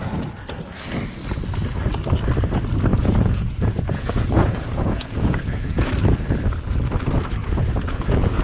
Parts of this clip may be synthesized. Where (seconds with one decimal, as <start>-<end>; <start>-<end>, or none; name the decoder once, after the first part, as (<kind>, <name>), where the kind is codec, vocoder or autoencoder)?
2.9-5.9 (vocoder, Vocos); 7.4-8.4